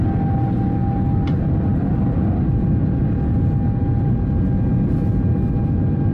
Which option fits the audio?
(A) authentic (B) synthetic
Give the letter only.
A